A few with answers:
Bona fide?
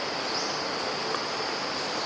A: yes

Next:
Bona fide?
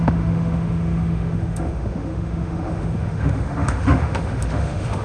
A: no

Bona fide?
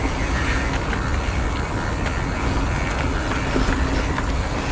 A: yes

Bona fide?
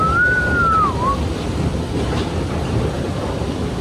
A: yes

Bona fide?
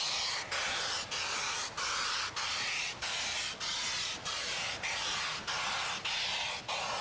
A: yes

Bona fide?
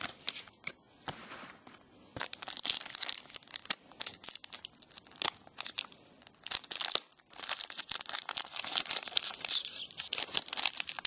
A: no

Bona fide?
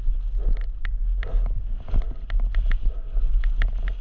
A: yes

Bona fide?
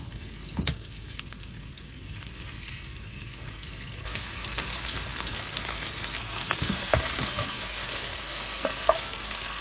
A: no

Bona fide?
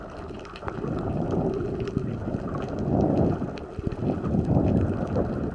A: yes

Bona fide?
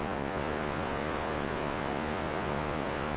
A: no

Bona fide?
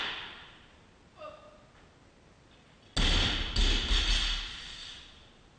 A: yes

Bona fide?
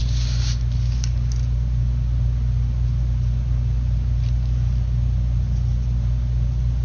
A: yes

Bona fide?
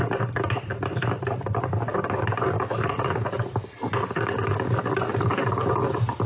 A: yes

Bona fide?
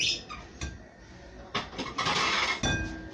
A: yes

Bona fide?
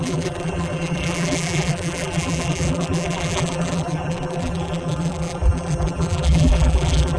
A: no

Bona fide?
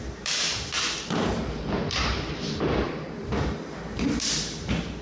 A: no